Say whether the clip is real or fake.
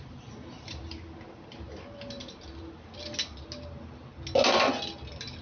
real